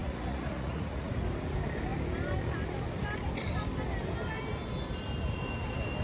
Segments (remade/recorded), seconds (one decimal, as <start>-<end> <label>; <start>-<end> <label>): 0.0-1.1 remade; 1.1-6.0 recorded